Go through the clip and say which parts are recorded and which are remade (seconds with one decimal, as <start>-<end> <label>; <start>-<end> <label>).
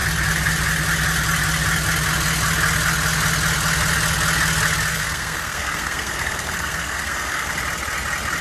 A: 0.0-4.9 recorded; 4.9-7.5 remade; 7.5-8.4 recorded